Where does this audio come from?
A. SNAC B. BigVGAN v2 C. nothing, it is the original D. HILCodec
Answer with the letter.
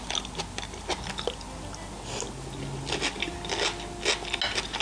C